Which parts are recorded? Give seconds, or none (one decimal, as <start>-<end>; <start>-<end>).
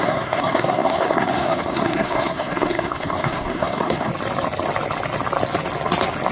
4.1-6.3